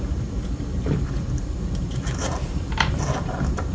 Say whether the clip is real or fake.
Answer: fake